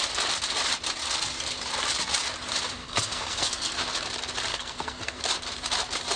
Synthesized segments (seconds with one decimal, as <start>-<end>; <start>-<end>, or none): 2.8-3.8; 4.5-5.2